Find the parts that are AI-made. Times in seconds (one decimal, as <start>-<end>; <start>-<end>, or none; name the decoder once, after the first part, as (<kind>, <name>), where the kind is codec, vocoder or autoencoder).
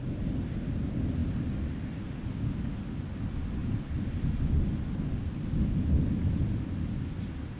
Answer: none